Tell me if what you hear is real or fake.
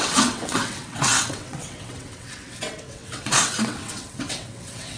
fake